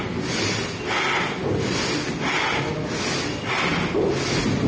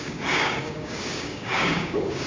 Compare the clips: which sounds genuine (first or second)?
first